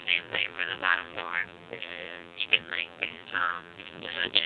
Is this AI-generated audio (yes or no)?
yes